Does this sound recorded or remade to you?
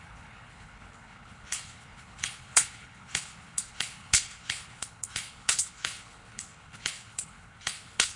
remade